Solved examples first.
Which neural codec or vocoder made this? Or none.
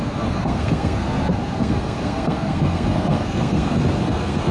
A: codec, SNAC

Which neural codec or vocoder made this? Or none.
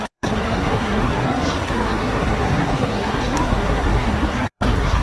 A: codec, SNAC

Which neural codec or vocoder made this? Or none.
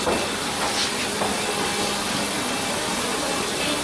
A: none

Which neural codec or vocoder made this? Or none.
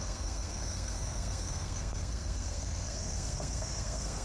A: codec, SNAC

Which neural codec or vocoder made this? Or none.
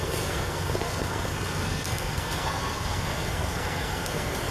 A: codec, SNAC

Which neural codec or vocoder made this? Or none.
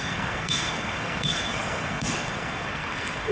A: codec, SNAC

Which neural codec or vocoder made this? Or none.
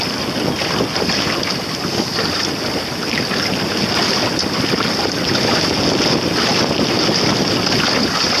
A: none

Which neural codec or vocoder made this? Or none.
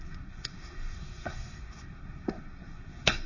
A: codec, SNAC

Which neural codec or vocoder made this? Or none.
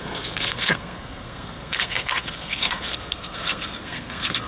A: codec, SNAC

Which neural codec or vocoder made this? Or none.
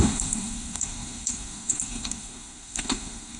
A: codec, SNAC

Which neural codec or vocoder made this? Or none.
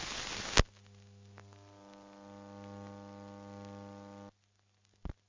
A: none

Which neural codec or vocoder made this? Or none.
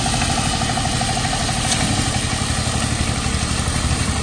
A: none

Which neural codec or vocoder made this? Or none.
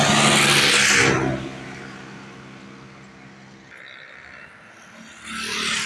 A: none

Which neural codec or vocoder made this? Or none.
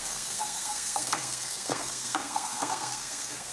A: codec, SNAC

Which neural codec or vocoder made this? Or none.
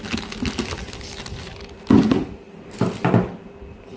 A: none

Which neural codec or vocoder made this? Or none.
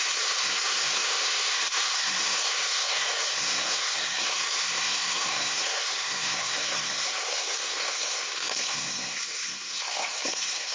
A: codec, SNAC